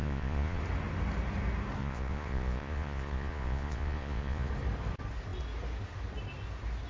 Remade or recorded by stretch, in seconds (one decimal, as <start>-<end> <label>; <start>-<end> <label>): 0.0-0.6 remade; 0.6-1.8 recorded; 1.8-4.5 remade; 4.5-6.9 recorded